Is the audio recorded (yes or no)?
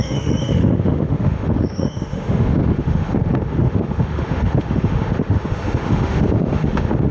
no